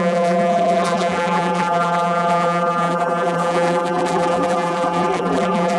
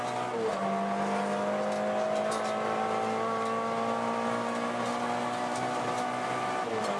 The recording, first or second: second